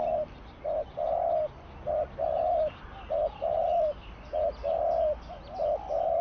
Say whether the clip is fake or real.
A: real